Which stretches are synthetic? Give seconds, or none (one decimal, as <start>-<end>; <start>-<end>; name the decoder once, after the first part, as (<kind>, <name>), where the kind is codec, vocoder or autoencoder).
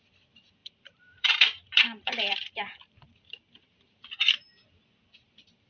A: 0.6-4.0 (vocoder, BigVGAN v2)